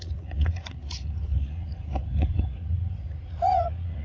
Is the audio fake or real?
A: fake